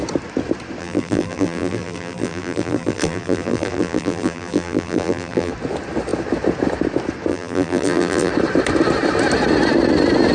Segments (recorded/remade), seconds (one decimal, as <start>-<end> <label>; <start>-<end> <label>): 0.0-0.8 recorded; 0.8-5.5 remade; 5.5-7.3 recorded; 7.3-8.3 remade; 8.3-10.3 recorded